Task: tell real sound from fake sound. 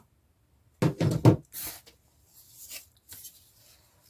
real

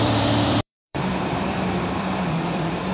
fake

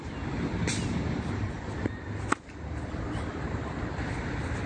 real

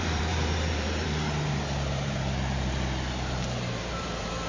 fake